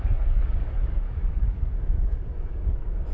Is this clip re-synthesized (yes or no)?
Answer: yes